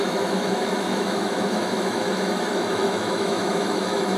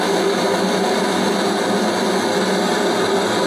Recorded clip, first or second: second